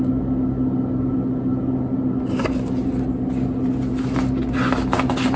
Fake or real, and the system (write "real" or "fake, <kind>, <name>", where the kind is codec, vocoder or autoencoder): real